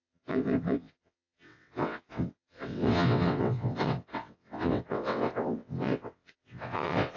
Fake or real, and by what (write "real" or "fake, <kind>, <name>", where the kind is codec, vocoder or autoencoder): fake, vocoder, WaveNeXt